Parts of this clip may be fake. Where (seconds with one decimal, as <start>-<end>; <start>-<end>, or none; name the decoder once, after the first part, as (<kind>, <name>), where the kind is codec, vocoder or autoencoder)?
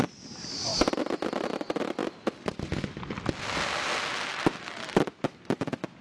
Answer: none